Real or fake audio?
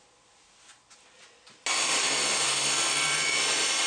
real